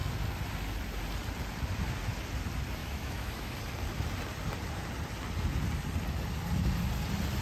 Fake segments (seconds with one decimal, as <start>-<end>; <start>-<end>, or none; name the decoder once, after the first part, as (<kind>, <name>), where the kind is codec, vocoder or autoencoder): 2.8-3.6 (autoencoder, DAC-VAE)